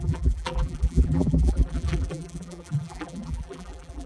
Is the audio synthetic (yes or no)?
yes